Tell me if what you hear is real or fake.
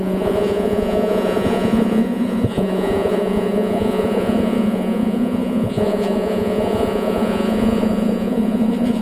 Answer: fake